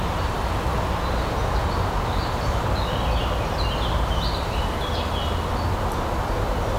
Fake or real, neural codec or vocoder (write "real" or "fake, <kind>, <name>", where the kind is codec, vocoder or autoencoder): real